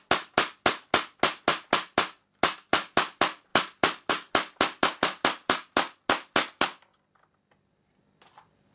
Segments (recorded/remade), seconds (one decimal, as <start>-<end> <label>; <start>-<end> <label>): 0.0-8.7 recorded